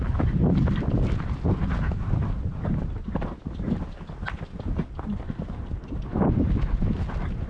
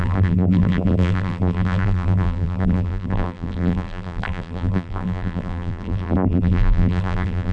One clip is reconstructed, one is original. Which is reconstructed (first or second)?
second